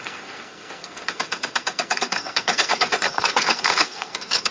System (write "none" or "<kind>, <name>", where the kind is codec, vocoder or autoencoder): codec, SNAC